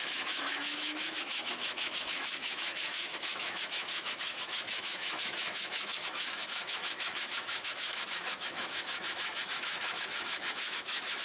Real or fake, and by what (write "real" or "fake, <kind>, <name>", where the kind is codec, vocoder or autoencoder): fake, autoencoder, DAC-VAE